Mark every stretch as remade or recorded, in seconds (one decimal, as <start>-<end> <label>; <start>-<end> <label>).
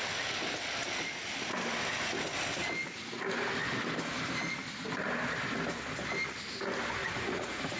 0.0-7.0 recorded; 7.0-7.8 remade